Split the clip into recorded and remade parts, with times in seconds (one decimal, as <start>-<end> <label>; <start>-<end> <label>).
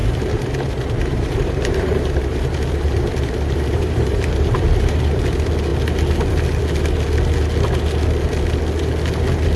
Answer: 0.0-5.2 remade; 5.2-9.6 recorded